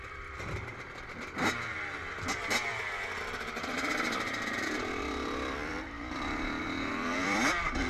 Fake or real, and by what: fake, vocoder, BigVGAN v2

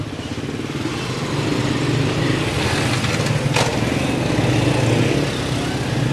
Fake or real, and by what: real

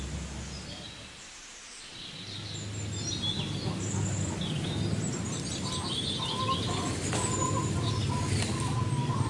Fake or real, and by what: real